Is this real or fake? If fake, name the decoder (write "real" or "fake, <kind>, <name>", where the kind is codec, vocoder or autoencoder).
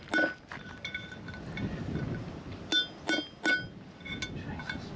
real